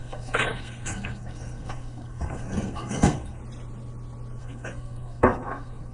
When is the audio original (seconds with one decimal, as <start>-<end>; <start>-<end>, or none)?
3.4-4.4